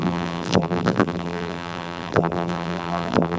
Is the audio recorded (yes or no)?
no